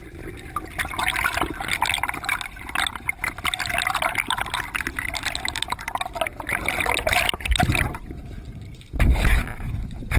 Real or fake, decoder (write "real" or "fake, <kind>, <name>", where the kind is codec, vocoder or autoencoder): real